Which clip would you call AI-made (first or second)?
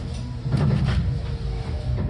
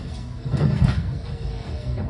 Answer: second